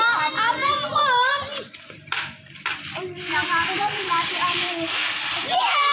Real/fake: fake